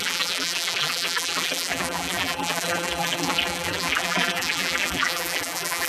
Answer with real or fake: fake